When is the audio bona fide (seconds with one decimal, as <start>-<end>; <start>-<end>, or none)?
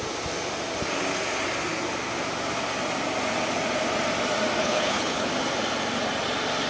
0.0-4.6; 5.3-6.7